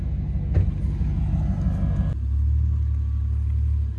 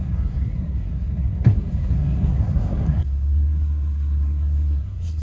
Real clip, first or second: first